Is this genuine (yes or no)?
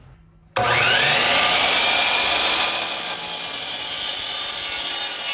yes